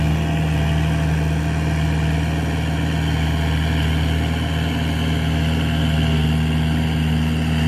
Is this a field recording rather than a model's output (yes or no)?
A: yes